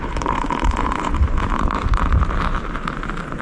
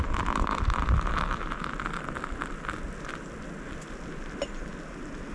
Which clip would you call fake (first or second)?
first